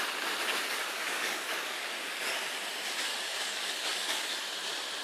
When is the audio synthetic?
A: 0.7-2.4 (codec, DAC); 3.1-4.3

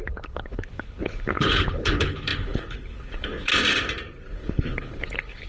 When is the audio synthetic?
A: 0.0-3.5 (codec, HILCodec); 4.3-5.5